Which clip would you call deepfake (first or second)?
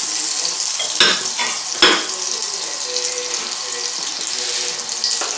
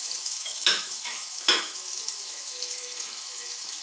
second